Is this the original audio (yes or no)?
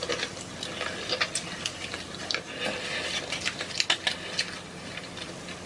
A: yes